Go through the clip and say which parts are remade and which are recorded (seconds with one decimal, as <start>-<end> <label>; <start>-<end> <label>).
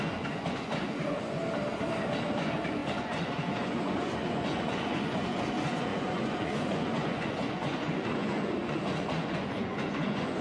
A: 0.0-1.4 remade; 1.4-2.4 recorded; 2.4-10.4 remade